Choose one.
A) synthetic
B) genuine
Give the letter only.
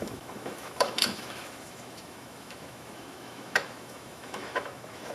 A